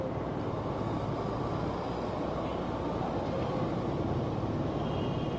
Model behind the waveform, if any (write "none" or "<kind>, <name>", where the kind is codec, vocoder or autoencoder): none